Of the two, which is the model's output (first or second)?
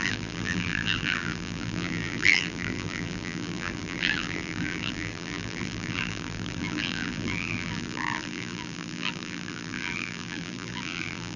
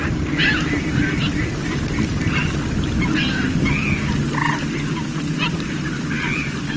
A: first